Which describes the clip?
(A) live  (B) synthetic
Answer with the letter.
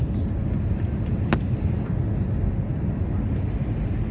A